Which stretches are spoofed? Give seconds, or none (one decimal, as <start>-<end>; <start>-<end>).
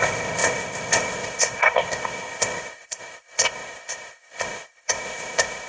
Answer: 0.0-5.7